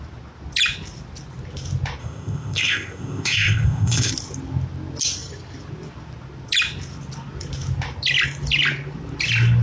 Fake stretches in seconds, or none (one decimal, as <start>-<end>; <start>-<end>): 2.0-4.1